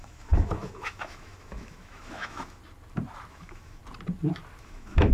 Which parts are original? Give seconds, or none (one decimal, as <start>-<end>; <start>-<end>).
2.6-3.3; 3.8-4.6